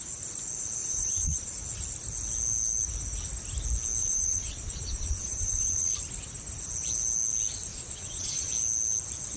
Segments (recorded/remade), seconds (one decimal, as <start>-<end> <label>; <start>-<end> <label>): 0.0-0.8 recorded; 0.8-1.5 remade; 1.5-4.0 recorded; 4.0-5.9 remade; 5.9-7.7 recorded; 7.7-8.5 remade; 8.5-9.4 recorded